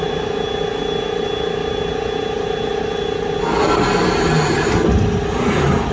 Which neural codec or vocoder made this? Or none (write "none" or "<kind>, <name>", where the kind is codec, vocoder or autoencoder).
none